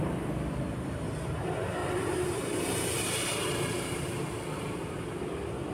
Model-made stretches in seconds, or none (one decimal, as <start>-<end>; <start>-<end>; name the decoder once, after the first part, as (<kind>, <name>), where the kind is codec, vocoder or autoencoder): 1.8-5.2 (vocoder, BigVGAN v2)